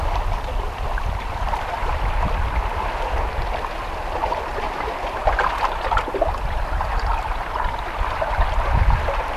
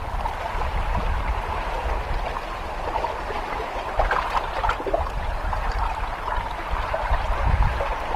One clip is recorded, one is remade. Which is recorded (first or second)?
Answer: second